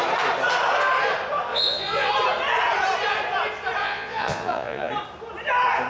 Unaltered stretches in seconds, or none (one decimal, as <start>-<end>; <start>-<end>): 0.0-1.5; 2.1-3.8; 4.9-5.9